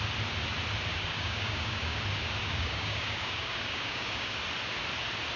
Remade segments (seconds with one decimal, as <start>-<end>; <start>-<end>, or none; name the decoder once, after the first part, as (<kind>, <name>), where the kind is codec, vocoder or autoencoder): 0.9-2.0 (codec, DAC); 2.4-4.4